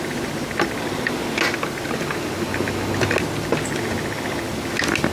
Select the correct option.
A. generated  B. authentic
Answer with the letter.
B